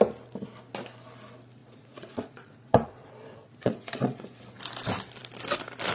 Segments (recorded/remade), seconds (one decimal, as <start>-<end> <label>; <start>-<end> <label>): 0.0-1.6 recorded; 1.6-4.4 remade; 4.4-5.9 recorded